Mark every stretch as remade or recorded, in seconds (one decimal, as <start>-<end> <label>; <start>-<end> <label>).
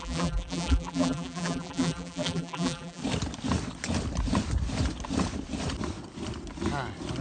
0.0-3.0 remade; 3.0-7.2 recorded